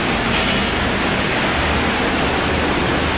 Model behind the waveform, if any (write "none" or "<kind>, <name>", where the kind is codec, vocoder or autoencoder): none